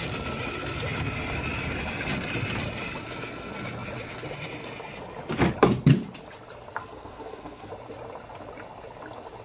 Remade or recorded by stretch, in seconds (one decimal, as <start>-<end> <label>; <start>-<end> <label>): 0.0-6.8 recorded; 6.8-7.7 remade; 7.7-9.4 recorded